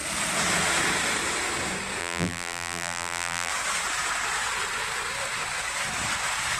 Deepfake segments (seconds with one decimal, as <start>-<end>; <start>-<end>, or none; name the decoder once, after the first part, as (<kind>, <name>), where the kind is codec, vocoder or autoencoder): 2.0-3.5 (vocoder, BigVGAN v2)